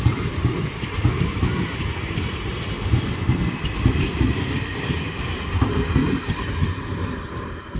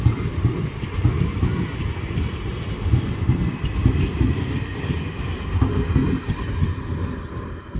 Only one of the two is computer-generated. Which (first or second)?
first